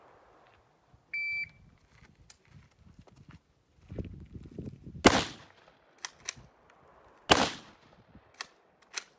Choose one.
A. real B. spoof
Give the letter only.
A